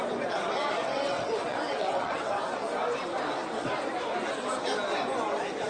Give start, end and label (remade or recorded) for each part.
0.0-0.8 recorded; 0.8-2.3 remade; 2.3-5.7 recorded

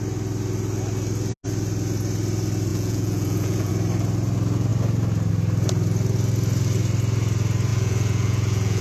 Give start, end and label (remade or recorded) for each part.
0.0-2.7 recorded; 2.7-3.7 remade; 3.7-7.7 recorded; 7.7-8.8 remade

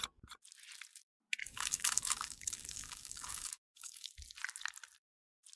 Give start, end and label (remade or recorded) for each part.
0.0-1.4 recorded; 1.4-4.1 remade; 4.1-5.6 recorded

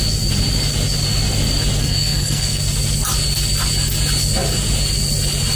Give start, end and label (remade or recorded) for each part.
0.0-1.8 recorded; 1.8-2.6 remade; 2.6-5.6 recorded